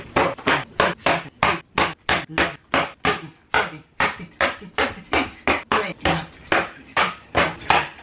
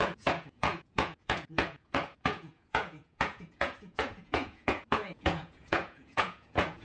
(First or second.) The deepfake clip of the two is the second